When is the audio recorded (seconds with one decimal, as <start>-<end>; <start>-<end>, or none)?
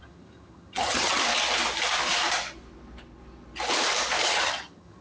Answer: 1.2-4.2